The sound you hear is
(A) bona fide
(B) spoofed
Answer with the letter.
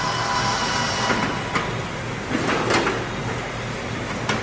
A